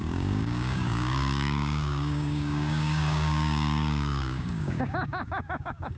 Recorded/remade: remade